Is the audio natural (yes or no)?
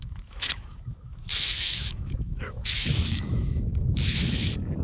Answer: no